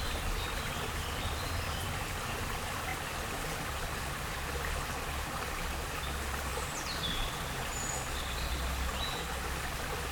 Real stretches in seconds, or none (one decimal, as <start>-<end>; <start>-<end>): 0.0-6.5; 7.3-10.1